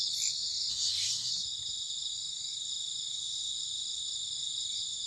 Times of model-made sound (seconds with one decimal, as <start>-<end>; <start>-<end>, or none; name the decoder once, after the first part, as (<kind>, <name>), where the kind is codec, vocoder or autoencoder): 0.7-1.3 (codec, SNAC)